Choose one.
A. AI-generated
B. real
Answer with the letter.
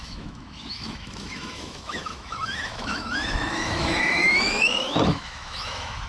A